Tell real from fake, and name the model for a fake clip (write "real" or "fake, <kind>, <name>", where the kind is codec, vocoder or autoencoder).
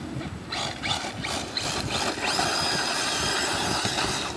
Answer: real